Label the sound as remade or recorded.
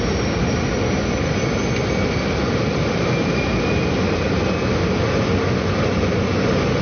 recorded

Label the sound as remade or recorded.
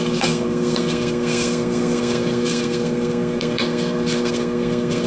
remade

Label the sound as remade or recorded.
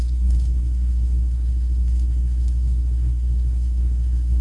remade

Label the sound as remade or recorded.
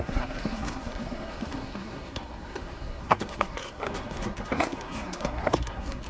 remade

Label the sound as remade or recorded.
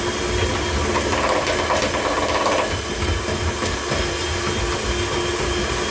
recorded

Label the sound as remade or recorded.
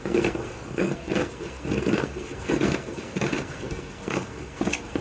remade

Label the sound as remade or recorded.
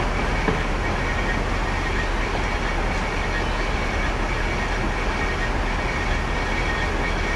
recorded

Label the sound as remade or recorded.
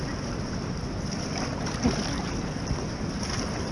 recorded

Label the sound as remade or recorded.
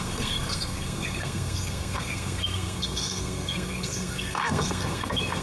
remade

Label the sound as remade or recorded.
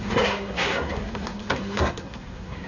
remade